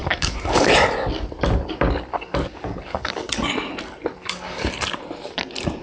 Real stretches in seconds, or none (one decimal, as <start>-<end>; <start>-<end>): 0.7-2.1; 3.3-4.2; 4.7-5.8

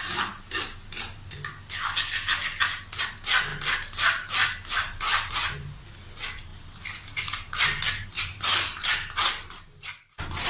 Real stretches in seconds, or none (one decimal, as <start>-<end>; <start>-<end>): 0.0-10.5

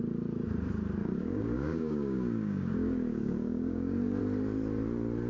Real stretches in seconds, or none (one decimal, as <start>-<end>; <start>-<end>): 0.0-1.0; 4.2-5.3

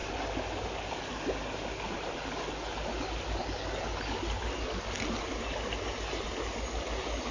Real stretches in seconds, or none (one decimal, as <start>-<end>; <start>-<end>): 0.0-7.3

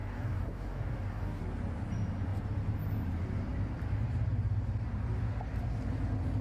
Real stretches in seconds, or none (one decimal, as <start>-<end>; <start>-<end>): 1.4-6.4

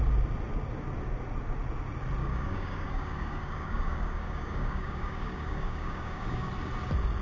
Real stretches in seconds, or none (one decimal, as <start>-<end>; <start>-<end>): 0.0-2.2; 6.5-7.2

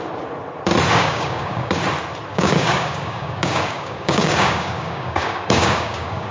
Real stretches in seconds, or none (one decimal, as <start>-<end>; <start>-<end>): 0.0-0.9; 1.7-2.3